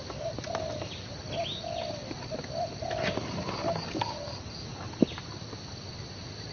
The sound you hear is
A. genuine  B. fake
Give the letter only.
A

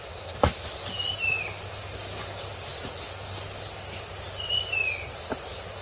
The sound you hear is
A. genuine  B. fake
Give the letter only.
A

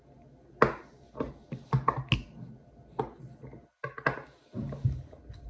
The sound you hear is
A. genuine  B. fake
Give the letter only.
A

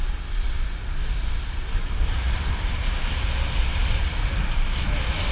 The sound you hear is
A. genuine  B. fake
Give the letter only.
A